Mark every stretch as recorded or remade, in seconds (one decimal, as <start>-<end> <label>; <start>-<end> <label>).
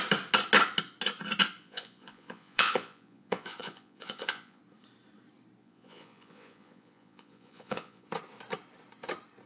0.0-1.6 recorded; 1.6-4.6 remade; 4.6-5.6 recorded; 5.6-8.1 remade; 8.1-9.5 recorded